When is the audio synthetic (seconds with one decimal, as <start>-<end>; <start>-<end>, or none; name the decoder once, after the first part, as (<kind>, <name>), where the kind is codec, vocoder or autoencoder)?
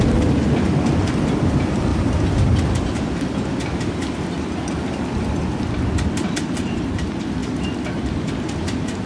none